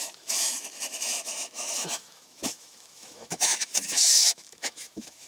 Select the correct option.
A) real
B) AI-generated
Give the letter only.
B